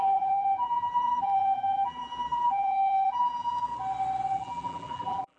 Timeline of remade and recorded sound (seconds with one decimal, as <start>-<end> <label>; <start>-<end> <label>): 0.0-3.7 remade; 3.7-4.3 recorded; 4.3-5.4 remade